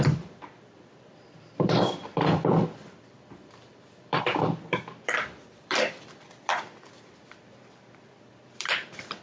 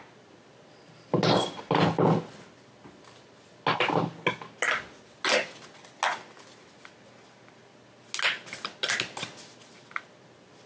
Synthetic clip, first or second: first